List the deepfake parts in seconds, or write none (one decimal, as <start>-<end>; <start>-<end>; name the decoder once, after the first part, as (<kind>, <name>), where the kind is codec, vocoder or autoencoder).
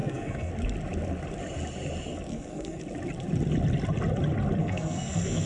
0.0-0.5 (codec, SNAC); 2.3-2.8; 4.6-5.5